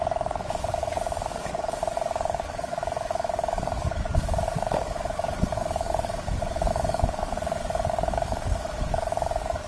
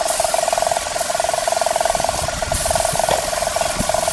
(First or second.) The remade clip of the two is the first